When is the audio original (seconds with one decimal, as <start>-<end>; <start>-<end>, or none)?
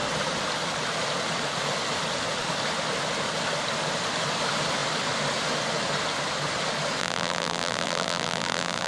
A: 0.0-7.0